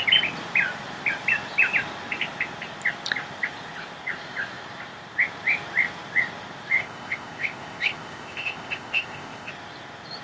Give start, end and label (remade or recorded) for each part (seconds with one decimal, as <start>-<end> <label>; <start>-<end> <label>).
0.0-6.8 recorded; 6.8-9.5 remade; 9.5-10.2 recorded

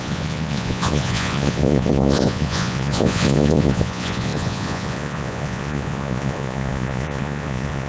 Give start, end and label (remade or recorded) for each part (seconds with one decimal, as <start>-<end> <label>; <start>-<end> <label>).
0.0-7.9 remade

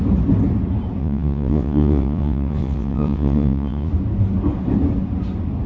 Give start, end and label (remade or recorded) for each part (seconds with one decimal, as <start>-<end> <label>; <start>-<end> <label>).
0.0-1.0 recorded; 1.0-3.9 remade; 3.9-5.7 recorded

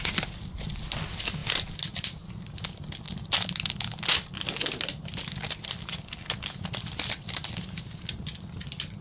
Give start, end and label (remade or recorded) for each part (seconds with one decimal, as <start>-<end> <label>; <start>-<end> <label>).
0.0-9.0 recorded

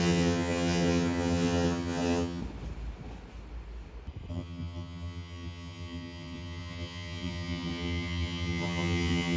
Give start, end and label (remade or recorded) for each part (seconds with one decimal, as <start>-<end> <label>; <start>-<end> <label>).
0.0-2.4 remade; 2.4-4.3 recorded; 4.3-9.4 remade

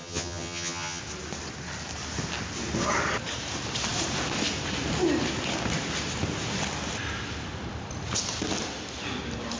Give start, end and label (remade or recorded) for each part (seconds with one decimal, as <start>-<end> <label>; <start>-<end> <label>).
0.0-1.0 remade; 1.0-9.6 recorded

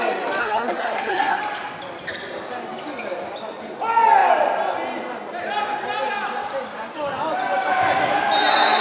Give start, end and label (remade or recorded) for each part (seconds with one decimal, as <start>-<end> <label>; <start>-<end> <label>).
0.0-0.4 recorded; 0.4-1.4 remade; 1.4-8.8 recorded

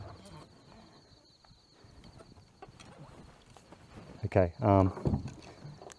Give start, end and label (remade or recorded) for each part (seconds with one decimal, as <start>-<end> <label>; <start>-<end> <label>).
0.0-6.0 recorded